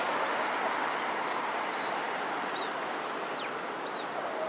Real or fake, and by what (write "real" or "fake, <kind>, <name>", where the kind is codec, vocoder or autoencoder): real